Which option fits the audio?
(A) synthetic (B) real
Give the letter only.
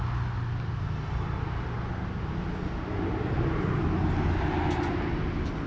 B